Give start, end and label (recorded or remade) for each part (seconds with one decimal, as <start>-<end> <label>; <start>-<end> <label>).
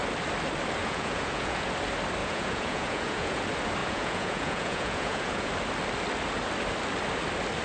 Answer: 0.0-0.8 recorded; 0.8-1.7 remade; 1.7-2.2 recorded; 2.2-3.4 remade; 3.4-3.8 recorded; 3.8-5.5 remade; 5.5-7.6 recorded